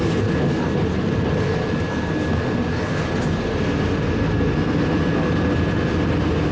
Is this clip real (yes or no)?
yes